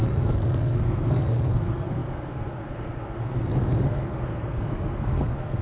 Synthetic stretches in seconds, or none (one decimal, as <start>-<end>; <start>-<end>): 0.0-5.6